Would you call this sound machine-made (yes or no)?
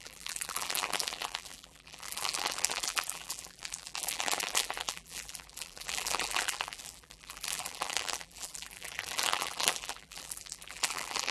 yes